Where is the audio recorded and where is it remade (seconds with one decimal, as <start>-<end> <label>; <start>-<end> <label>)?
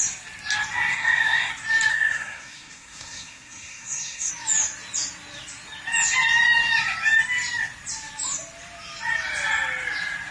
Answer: 0.0-0.9 recorded; 0.9-1.5 remade; 1.5-1.9 recorded; 1.9-4.3 remade; 4.3-10.3 recorded